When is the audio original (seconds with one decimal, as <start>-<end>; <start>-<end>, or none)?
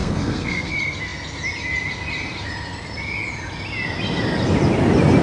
0.7-5.2